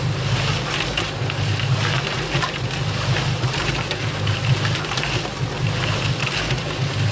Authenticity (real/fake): real